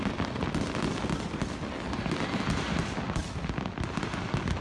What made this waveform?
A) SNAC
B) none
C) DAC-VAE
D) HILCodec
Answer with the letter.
B